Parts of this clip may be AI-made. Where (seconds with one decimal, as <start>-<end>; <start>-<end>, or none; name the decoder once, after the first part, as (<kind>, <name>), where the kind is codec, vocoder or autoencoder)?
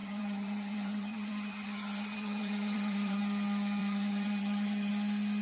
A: 0.0-3.2 (vocoder, HiFi-GAN); 3.8-4.9